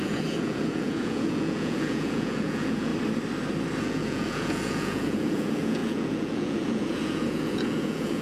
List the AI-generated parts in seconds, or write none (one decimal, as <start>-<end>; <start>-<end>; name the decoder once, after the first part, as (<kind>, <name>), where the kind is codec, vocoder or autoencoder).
0.0-2.9 (vocoder, Vocos); 3.8-8.2